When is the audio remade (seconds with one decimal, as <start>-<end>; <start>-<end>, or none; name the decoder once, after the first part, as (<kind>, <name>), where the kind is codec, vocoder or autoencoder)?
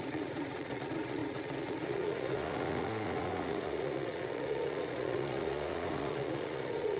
0.0-7.0 (vocoder, Vocos)